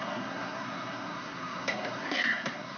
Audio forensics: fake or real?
fake